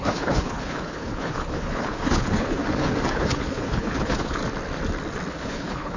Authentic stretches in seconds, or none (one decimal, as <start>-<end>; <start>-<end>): 2.6-3.1; 4.4-5.3